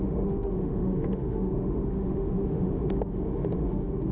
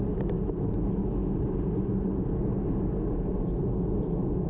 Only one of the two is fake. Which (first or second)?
first